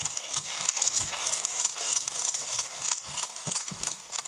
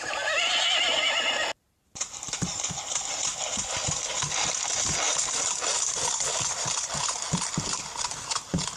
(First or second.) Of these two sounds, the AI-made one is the first